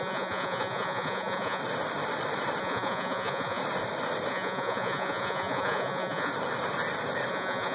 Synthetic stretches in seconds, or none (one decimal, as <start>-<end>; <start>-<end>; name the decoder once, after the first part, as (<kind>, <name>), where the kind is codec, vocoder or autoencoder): 0.0-1.6 (vocoder, Vocos); 2.6-3.6; 4.3-6.3; 7.3-7.7